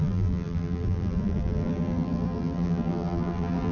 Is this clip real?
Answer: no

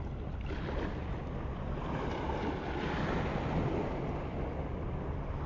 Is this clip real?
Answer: yes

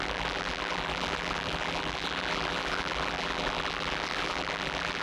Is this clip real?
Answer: no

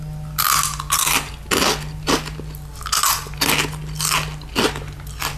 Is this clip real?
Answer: yes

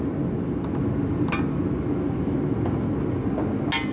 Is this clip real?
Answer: yes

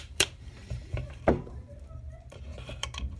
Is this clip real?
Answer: no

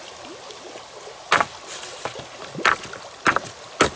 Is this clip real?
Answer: yes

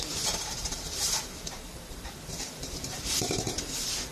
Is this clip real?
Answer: no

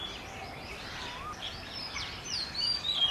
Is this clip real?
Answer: no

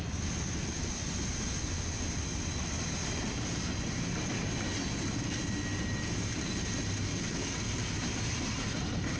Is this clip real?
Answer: yes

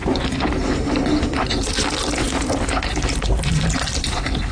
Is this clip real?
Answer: yes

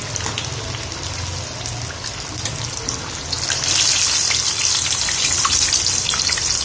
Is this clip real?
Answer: yes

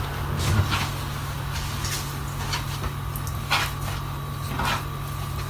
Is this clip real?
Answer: yes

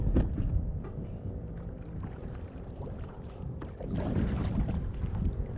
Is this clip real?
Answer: no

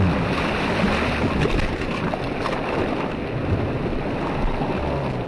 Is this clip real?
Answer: yes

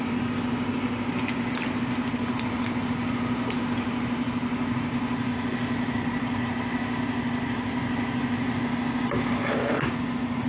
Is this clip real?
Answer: yes